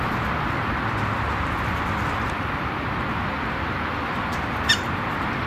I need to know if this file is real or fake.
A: real